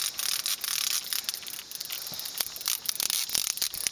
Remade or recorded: recorded